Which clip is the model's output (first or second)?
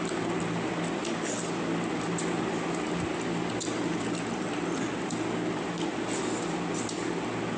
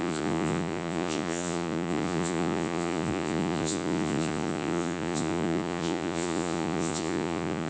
second